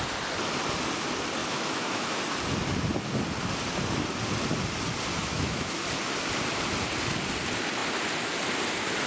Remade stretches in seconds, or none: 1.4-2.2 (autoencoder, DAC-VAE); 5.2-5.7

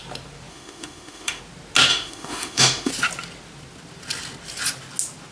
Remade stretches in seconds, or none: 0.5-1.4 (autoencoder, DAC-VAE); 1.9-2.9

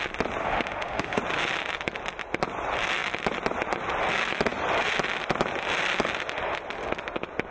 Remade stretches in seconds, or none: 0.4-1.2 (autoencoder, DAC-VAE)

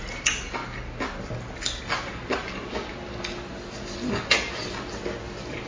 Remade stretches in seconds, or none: none

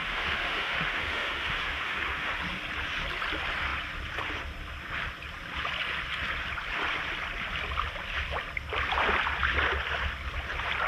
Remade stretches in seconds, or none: 0.0-2.3 (autoencoder, DAC-VAE)

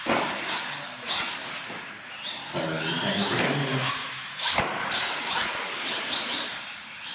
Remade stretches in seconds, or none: 4.0-4.6 (autoencoder, DAC-VAE)

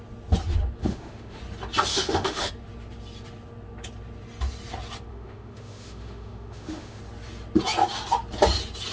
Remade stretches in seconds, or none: 0.8-1.4 (autoencoder, DAC-VAE); 1.9-2.5; 5.1-7.0

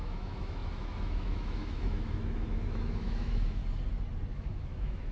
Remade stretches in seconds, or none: 0.0-3.6 (autoencoder, DAC-VAE); 4.3-5.1